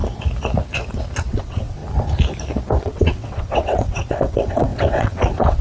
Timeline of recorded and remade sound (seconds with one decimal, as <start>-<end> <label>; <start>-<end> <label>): 0.0-1.3 recorded; 1.3-1.8 remade; 1.8-2.8 recorded; 2.8-5.6 remade